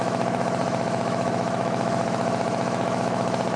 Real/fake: fake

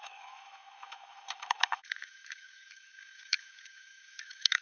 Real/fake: fake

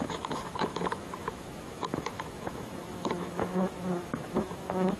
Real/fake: fake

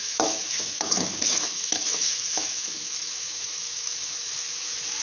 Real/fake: fake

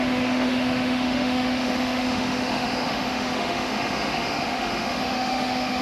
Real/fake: fake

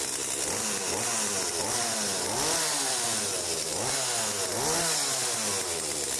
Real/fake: real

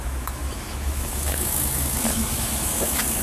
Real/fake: fake